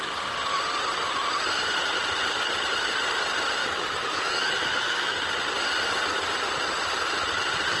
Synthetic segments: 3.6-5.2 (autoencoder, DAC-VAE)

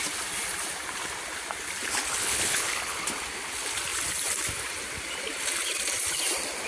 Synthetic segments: 2.2-3.0 (codec, HILCodec)

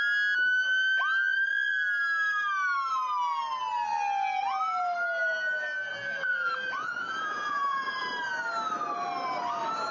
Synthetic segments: 5.9-7.9 (vocoder, Vocos)

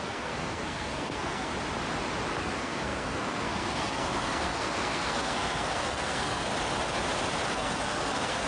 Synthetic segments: 0.0-1.5 (codec, SNAC); 2.4-6.5; 7.5-8.5

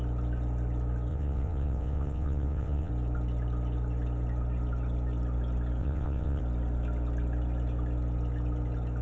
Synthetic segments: 1.1-2.9 (vocoder, WaveNeXt); 5.8-6.4

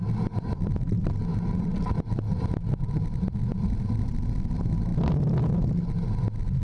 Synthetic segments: none

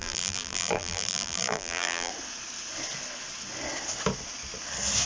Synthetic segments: 0.0-2.1 (vocoder, BigVGAN v2)

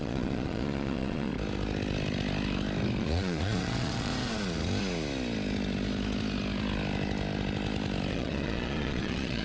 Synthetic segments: 0.0-1.3 (vocoder, Vocos); 3.0-4.1; 8.1-9.4